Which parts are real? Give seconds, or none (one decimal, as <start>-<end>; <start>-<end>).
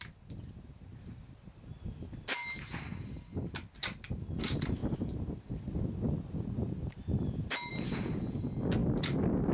0.0-9.5